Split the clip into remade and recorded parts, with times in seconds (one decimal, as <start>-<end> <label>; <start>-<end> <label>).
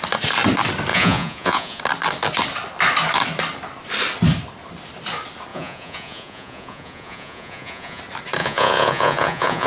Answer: 0.0-0.9 recorded; 0.9-1.8 remade; 1.8-5.5 recorded; 5.5-8.0 remade; 8.0-8.4 recorded; 8.4-9.7 remade